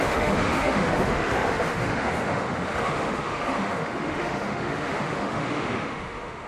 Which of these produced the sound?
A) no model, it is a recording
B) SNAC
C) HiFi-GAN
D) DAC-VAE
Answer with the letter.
D